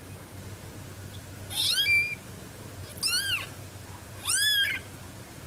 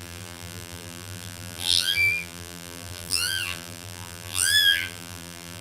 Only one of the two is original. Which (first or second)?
first